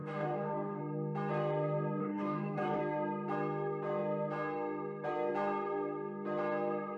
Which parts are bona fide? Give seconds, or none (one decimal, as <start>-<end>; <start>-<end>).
0.8-2.0; 2.8-7.0